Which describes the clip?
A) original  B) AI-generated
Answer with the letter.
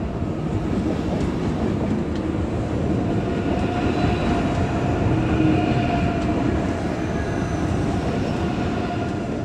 A